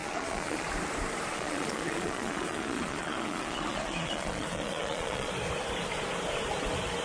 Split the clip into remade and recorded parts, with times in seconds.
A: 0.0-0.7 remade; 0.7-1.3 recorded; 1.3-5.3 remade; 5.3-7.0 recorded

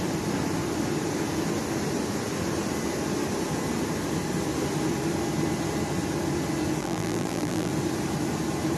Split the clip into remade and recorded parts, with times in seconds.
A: 0.0-6.8 recorded; 6.8-7.7 remade; 7.7-8.8 recorded

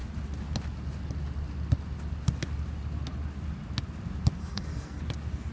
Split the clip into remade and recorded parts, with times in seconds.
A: 0.0-4.4 recorded; 4.4-5.0 remade; 5.0-5.5 recorded

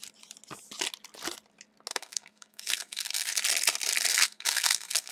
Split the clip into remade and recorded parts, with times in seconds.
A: 0.0-1.9 recorded; 1.9-3.4 remade; 3.4-4.1 recorded; 4.1-5.1 remade

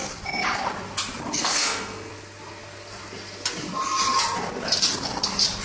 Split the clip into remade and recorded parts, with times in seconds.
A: 0.0-1.4 recorded; 1.4-2.1 remade; 2.1-5.6 recorded